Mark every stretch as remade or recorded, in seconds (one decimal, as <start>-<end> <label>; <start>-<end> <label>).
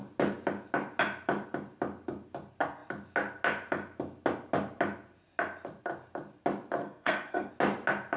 0.0-6.8 recorded; 6.8-7.5 remade; 7.5-8.2 recorded